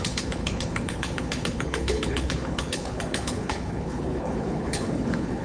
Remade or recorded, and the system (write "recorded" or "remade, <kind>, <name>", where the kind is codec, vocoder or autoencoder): remade, codec, HILCodec